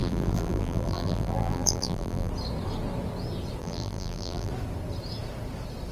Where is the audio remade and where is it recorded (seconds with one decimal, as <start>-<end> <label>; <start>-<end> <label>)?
0.0-2.3 remade; 2.3-3.6 recorded; 3.6-4.5 remade; 4.5-5.9 recorded